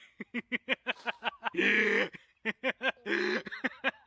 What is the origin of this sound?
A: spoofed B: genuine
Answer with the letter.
B